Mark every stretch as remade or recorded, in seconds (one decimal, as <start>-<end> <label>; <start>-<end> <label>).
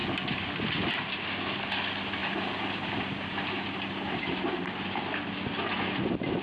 0.0-2.2 recorded; 2.2-5.0 remade; 5.0-6.4 recorded